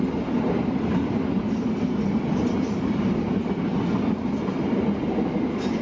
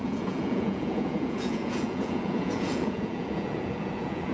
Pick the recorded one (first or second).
first